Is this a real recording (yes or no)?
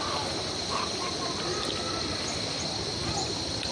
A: yes